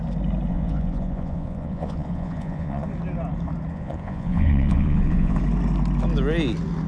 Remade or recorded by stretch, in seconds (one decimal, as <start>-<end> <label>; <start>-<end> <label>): 0.0-0.5 recorded; 0.5-2.9 remade; 2.9-3.7 recorded; 3.7-5.4 remade; 5.4-6.9 recorded